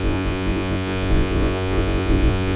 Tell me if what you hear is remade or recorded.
remade